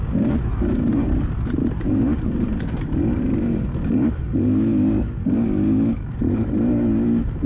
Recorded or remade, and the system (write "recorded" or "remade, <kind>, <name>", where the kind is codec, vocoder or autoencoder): remade, vocoder, BigVGAN v2